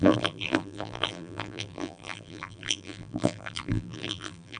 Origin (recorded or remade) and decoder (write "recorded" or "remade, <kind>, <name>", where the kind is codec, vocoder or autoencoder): remade, vocoder, BigVGAN v2